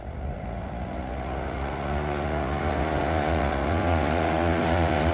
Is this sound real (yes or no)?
no